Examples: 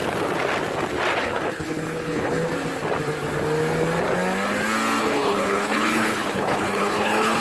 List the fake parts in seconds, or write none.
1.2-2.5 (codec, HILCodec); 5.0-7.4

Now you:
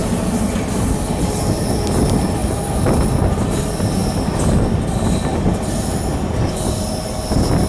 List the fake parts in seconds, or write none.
none